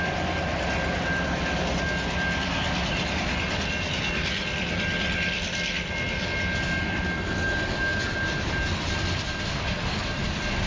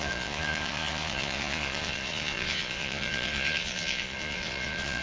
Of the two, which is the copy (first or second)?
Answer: second